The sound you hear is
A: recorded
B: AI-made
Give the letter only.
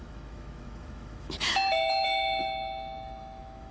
B